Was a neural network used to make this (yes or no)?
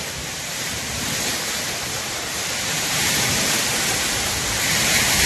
yes